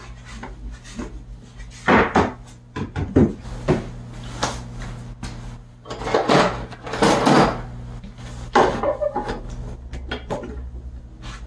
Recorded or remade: recorded